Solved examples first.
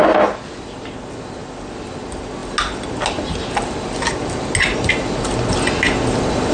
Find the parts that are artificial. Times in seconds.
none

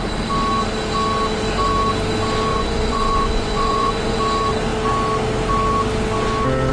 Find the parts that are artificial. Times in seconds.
2.5-4.2 (vocoder, Vocos)

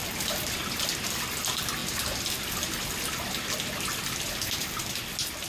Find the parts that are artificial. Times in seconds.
none

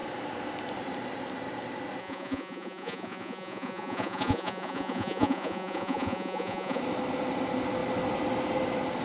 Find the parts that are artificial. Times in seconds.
2.0-6.8 (vocoder, Vocos)

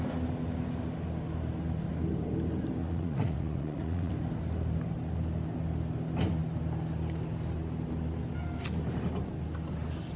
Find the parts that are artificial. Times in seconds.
2.8-4.1 (vocoder, Vocos)

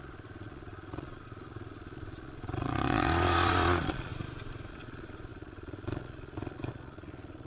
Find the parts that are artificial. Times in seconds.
0.0-4.1 (vocoder, Vocos); 4.7-7.5

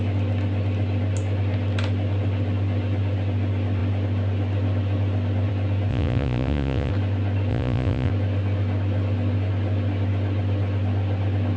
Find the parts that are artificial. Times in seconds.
5.9-6.9 (vocoder, Vocos); 7.5-8.1

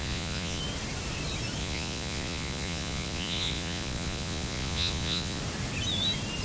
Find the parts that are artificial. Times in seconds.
0.0-0.6 (vocoder, Vocos); 1.6-5.4